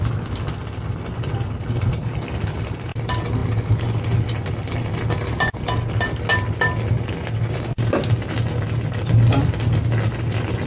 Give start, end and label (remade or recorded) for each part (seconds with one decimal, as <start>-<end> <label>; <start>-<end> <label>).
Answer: 0.0-10.7 recorded